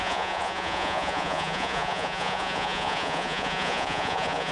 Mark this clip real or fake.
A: fake